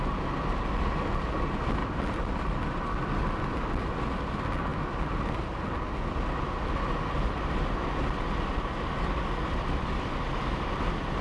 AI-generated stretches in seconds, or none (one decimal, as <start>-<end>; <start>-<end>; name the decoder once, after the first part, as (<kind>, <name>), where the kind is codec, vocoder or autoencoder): 1.8-2.5 (vocoder, BigVGAN v2)